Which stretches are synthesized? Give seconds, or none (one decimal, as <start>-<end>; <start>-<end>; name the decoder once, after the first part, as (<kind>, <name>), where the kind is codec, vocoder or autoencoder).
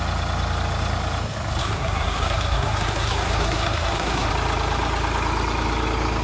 1.6-4.3 (codec, SNAC)